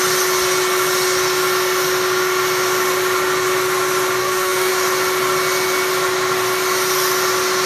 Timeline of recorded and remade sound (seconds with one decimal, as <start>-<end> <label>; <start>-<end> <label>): 0.0-4.2 recorded; 4.2-4.7 remade; 4.7-7.7 recorded